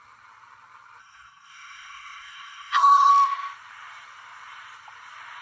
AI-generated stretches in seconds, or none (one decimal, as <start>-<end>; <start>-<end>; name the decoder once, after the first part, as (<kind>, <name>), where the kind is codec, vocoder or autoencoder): 1.0-3.1 (codec, SNAC)

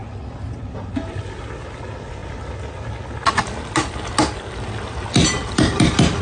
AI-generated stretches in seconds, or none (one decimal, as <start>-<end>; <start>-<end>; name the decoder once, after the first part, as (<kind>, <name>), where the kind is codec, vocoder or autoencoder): none

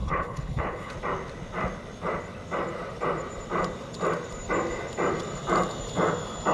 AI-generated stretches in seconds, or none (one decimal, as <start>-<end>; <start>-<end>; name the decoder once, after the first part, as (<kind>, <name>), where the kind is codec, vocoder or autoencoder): 0.0-0.9 (codec, HILCodec)

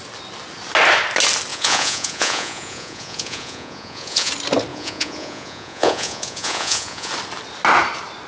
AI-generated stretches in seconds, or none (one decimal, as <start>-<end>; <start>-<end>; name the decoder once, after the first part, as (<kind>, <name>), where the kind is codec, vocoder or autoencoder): 1.5-4.3 (vocoder, Vocos); 4.7-7.1